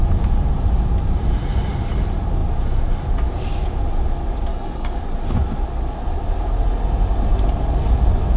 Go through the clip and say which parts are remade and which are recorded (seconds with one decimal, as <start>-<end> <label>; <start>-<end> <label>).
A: 0.0-4.5 recorded; 4.5-5.0 remade; 5.0-8.4 recorded